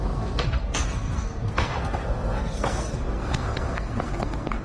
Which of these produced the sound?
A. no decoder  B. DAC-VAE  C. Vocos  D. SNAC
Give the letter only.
D